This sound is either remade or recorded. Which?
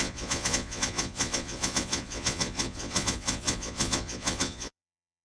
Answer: remade